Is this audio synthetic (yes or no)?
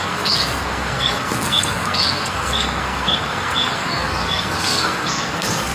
yes